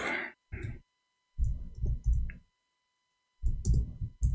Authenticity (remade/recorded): recorded